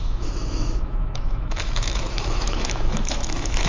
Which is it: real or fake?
fake